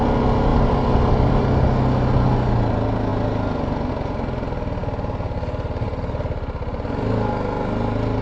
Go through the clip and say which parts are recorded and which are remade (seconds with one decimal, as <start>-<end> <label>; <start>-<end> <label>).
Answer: 0.0-8.2 recorded